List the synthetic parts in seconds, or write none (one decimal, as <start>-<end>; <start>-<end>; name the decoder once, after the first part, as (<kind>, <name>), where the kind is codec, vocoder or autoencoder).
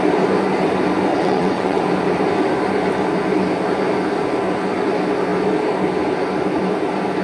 1.1-1.8 (vocoder, WaveNeXt)